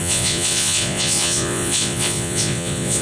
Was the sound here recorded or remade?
remade